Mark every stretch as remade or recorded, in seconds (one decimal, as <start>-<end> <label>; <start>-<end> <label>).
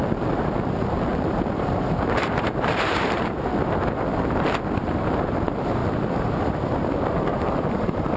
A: 0.0-3.5 remade; 3.5-4.4 recorded; 4.4-5.8 remade; 5.8-7.5 recorded; 7.5-8.2 remade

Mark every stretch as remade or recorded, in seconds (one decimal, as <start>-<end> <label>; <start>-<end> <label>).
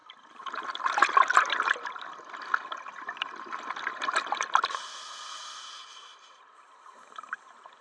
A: 0.0-7.8 recorded